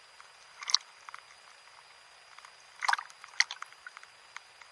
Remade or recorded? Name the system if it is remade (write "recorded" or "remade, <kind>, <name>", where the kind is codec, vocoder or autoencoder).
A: recorded